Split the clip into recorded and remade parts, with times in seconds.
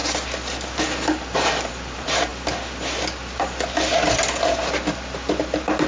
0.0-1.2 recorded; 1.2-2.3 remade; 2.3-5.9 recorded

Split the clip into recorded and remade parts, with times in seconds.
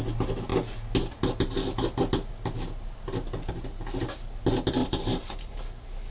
0.0-4.8 recorded; 4.8-5.6 remade; 5.6-6.1 recorded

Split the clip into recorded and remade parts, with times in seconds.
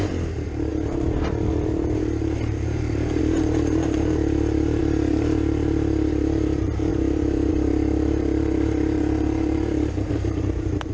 0.0-10.9 remade